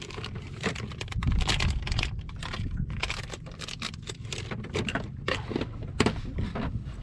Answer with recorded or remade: recorded